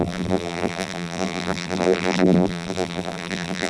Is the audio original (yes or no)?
no